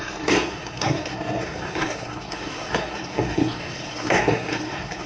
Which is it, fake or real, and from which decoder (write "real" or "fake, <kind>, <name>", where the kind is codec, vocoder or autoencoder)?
fake, codec, SNAC